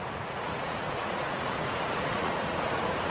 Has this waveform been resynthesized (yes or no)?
yes